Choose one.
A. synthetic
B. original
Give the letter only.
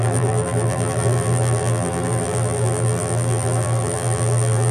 A